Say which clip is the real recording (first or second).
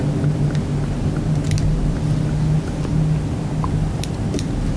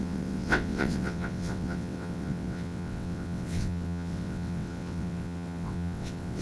first